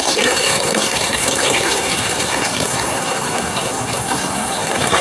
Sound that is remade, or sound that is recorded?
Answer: remade